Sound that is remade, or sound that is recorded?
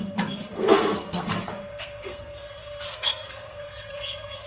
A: remade